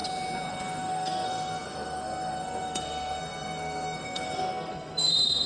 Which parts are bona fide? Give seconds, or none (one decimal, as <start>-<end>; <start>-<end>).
0.0-0.5